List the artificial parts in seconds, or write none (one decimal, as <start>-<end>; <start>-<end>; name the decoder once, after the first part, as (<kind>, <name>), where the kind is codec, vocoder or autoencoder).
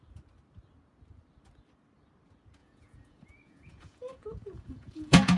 2.6-5.4 (vocoder, Vocos)